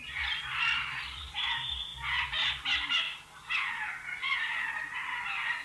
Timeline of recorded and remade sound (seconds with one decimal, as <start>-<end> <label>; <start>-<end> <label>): 0.0-5.6 recorded